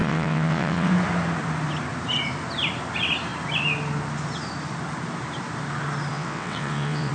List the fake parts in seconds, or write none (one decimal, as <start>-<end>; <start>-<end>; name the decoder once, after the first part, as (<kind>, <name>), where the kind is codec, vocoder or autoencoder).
0.0-0.9 (vocoder, WaveNeXt); 6.1-7.1